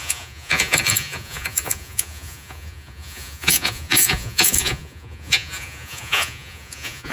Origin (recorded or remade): remade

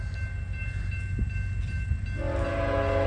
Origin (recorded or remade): recorded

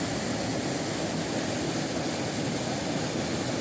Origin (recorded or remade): recorded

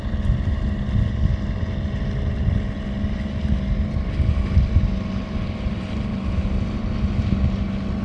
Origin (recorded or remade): recorded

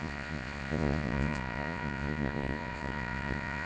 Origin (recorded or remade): remade